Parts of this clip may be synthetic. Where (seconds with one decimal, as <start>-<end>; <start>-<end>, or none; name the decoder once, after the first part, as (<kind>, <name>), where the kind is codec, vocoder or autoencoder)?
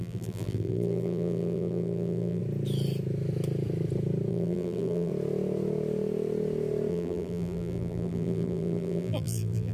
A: 0.0-2.4 (vocoder, BigVGAN v2); 4.3-5.1; 6.9-9.7